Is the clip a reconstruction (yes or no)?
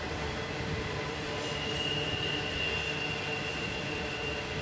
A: no